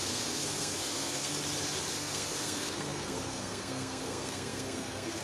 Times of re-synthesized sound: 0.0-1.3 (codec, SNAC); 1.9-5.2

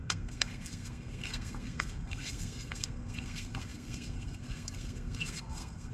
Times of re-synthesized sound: 0.0-5.9 (codec, SNAC)

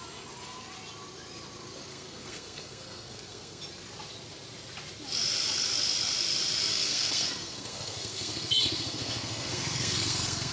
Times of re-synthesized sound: 1.9-3.6 (codec, SNAC); 6.7-10.5

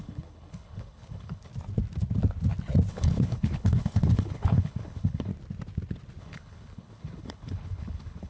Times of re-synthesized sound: 0.0-1.5 (codec, HILCodec); 2.9-5.3; 6.2-8.3

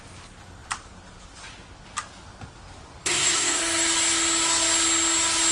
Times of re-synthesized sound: 3.0-3.6 (codec, SNAC)